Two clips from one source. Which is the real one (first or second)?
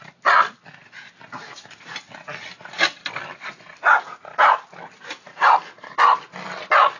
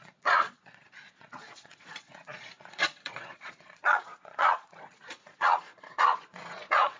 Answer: first